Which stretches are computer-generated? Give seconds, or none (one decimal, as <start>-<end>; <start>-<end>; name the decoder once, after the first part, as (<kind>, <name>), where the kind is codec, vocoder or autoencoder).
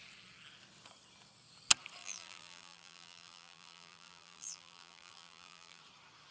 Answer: 2.0-5.8 (vocoder, BigVGAN v2)